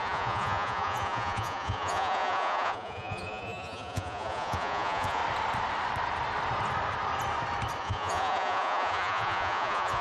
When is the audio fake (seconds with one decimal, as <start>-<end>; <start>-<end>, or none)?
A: 0.0-5.2; 7.8-10.0